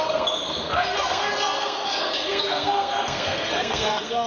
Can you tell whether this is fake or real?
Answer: fake